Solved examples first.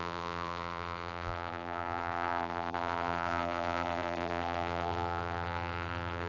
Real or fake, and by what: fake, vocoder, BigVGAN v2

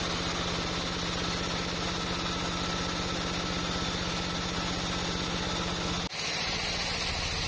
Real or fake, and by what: real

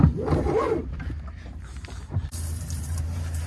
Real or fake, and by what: fake, vocoder, BigVGAN v2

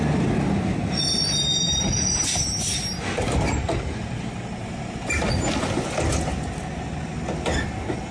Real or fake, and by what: real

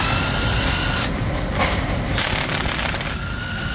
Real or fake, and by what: real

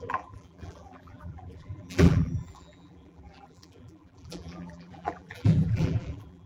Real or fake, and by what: fake, vocoder, BigVGAN v2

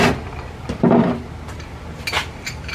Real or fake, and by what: real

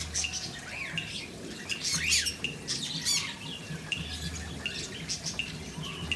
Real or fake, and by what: real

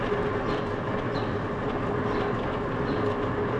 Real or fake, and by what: real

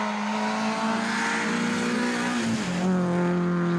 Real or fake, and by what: real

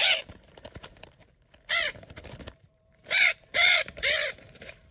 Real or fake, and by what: fake, vocoder, BigVGAN v2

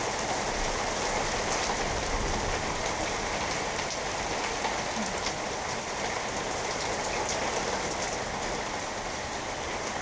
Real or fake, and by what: real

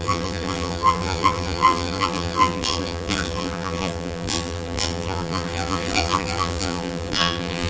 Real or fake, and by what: fake, vocoder, BigVGAN v2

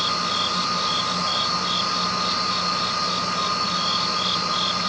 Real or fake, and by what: real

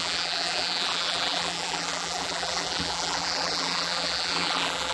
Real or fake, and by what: fake, vocoder, BigVGAN v2